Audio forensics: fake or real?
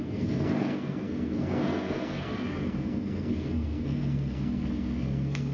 fake